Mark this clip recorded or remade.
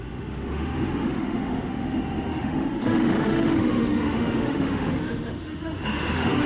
remade